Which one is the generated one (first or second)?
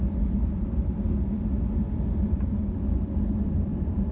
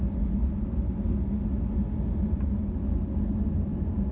first